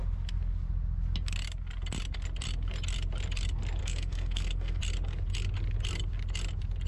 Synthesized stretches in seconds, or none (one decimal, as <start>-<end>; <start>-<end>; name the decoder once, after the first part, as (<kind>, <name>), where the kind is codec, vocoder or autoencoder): 3.8-4.8 (codec, SNAC)